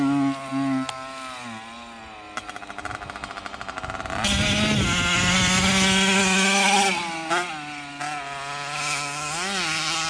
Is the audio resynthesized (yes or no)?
no